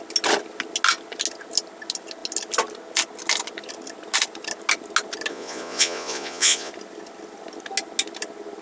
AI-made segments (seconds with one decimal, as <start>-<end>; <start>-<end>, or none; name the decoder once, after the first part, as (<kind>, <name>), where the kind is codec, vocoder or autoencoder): 5.3-6.7 (vocoder, Vocos)